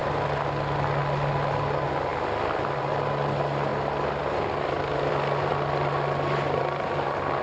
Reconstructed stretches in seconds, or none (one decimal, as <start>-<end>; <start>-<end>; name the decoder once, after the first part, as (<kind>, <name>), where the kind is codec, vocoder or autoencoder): none